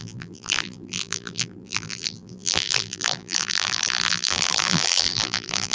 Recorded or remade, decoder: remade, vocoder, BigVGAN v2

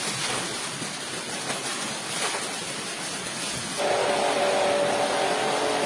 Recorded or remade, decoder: recorded